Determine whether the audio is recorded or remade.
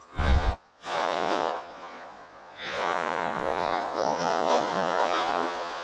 remade